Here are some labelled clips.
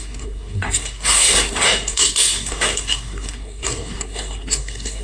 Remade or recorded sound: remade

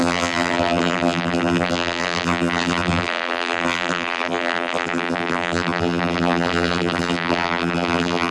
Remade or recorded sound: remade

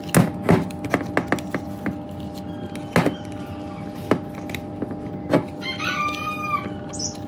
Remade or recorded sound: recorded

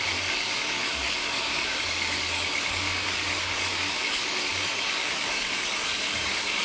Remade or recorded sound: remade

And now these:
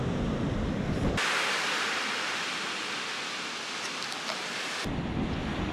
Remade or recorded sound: recorded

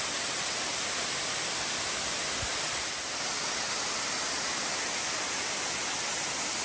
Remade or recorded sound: recorded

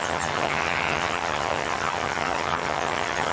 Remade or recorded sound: remade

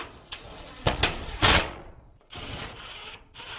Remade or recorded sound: remade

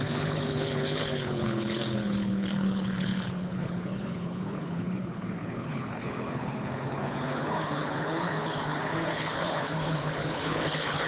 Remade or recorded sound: remade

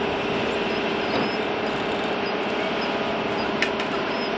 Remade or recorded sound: recorded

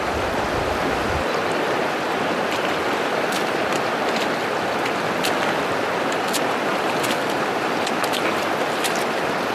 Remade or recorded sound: recorded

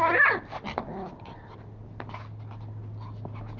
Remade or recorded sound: recorded